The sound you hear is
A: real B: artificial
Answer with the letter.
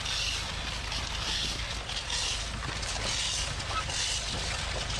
A